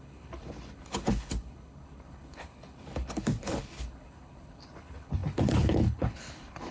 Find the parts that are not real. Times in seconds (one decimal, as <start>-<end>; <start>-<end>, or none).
0.0-6.7